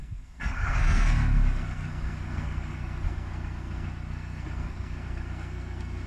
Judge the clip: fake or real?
fake